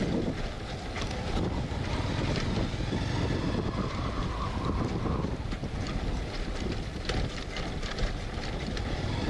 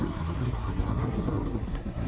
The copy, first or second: second